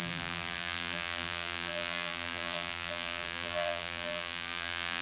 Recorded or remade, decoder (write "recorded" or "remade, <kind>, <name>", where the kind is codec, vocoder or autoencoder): remade, vocoder, BigVGAN v2